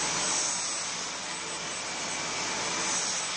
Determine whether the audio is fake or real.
real